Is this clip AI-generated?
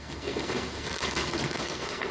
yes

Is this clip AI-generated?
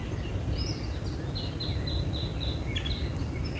no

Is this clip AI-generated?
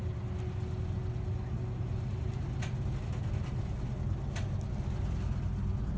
no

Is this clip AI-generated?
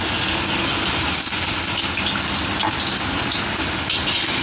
no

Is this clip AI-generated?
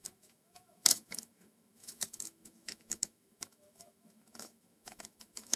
yes